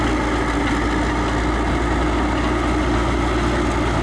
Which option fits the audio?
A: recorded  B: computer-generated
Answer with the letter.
A